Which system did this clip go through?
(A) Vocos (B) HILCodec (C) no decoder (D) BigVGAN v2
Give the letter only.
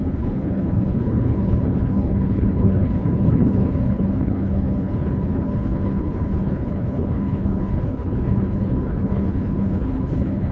B